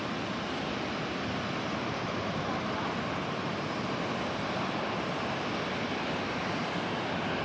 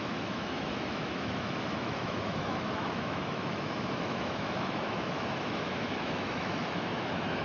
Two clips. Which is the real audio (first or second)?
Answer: first